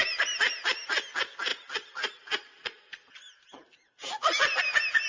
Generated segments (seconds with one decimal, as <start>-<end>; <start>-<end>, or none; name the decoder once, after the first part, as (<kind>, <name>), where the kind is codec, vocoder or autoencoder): none